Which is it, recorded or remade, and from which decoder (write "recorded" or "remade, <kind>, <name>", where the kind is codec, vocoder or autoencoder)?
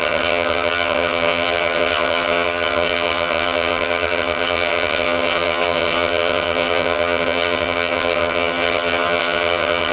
remade, vocoder, HiFi-GAN